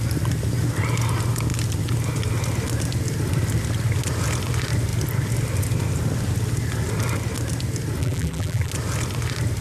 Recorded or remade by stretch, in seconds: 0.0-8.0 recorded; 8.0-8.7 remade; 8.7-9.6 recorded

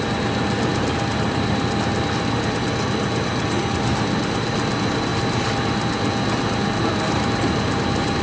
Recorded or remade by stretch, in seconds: 0.0-8.2 recorded

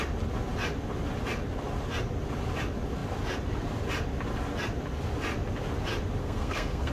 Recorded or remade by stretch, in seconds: 0.0-6.2 recorded; 6.2-6.9 remade